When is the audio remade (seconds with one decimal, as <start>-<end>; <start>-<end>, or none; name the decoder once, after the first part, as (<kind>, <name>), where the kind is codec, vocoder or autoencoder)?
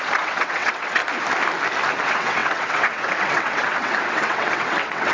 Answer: 0.0-1.0 (vocoder, WaveNeXt); 2.0-5.1